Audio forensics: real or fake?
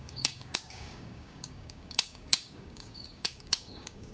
fake